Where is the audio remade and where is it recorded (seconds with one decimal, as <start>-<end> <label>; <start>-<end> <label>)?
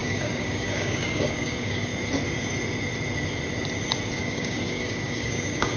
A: 0.0-1.9 remade; 1.9-4.2 recorded; 4.2-5.8 remade